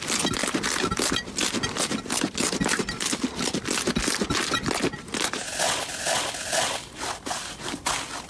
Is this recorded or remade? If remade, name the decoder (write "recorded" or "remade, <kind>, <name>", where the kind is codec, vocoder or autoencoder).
recorded